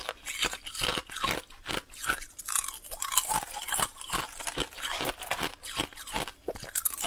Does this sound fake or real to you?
real